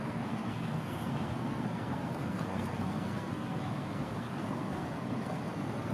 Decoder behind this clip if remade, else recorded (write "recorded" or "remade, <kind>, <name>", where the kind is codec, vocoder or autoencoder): remade, codec, SNAC